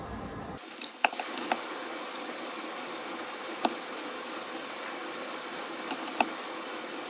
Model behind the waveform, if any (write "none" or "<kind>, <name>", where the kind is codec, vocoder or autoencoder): none